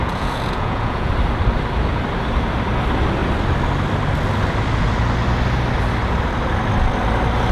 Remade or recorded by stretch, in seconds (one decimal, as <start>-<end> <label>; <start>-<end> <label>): 0.0-1.1 remade; 1.1-7.5 recorded